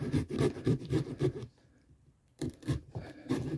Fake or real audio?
fake